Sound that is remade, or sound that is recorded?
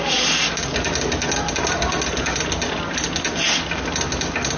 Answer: recorded